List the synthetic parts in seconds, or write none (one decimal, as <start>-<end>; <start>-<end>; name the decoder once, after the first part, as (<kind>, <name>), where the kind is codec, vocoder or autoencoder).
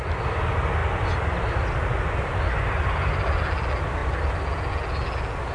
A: none